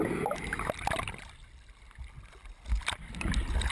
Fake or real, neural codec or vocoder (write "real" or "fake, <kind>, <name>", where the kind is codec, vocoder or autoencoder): real